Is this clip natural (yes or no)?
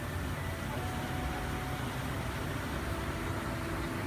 yes